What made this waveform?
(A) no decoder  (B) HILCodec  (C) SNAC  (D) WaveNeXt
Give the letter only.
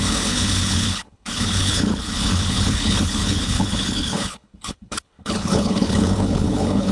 B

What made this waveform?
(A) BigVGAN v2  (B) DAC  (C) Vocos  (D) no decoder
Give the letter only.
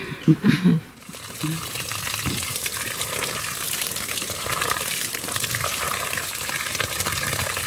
A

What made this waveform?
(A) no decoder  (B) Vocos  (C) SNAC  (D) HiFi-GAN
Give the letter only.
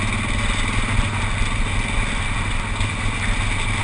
A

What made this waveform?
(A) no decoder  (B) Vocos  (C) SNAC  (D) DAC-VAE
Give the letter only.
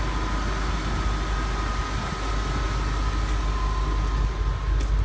A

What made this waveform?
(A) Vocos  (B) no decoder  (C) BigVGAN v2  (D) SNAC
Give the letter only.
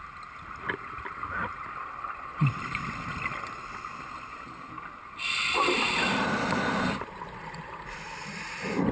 B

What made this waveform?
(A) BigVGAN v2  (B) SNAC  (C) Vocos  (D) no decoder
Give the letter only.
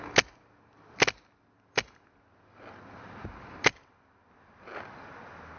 D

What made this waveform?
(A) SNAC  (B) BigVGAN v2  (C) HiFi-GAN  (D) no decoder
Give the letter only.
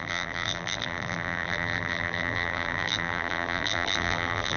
B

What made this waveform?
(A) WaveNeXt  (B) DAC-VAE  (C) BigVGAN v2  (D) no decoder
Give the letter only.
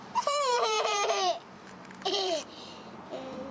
C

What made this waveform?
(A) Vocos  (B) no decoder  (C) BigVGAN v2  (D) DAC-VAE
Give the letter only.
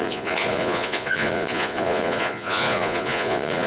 A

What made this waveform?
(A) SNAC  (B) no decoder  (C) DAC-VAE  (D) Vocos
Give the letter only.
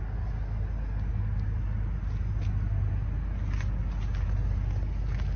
B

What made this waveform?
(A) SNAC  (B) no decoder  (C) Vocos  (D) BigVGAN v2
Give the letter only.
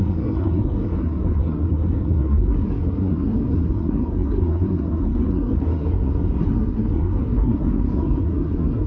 A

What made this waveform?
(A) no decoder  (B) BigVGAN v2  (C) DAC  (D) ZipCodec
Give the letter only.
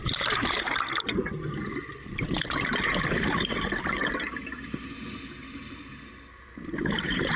A